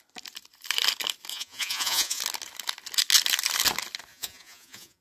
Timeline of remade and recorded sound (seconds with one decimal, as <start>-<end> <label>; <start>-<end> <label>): 0.0-1.3 recorded; 1.3-2.2 remade; 2.2-4.1 recorded; 4.1-5.0 remade